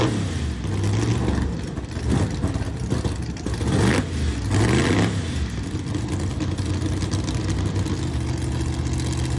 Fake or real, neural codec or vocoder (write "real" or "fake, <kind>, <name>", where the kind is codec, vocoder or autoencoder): real